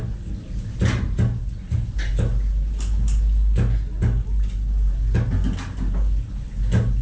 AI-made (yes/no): no